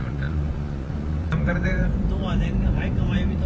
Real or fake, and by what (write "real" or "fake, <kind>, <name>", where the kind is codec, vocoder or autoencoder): fake, vocoder, Vocos